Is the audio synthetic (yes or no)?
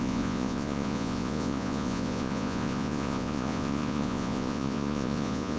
yes